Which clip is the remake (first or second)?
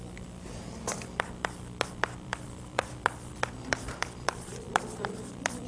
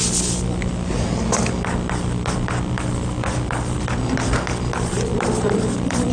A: first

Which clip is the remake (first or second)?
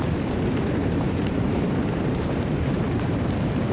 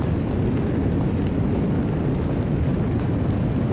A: first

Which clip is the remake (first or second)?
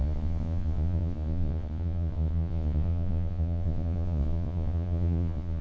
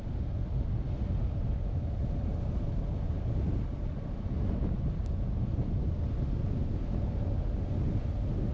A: first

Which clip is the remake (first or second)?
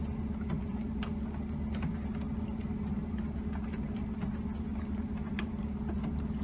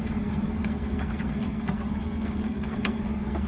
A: second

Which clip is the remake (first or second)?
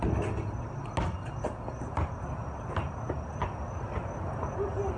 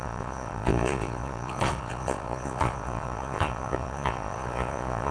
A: second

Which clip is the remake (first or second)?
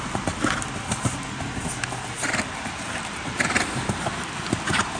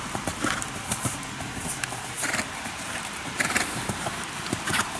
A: second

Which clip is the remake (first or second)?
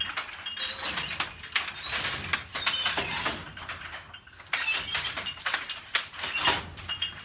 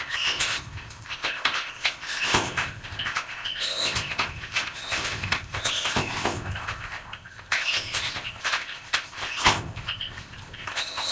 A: second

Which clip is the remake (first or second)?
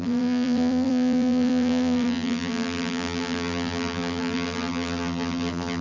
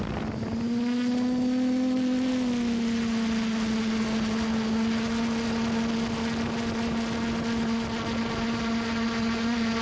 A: first